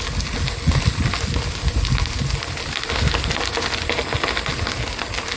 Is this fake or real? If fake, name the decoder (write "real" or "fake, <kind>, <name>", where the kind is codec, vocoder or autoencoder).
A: real